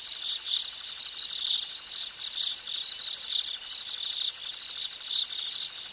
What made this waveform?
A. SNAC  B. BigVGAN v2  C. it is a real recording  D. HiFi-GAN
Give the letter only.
C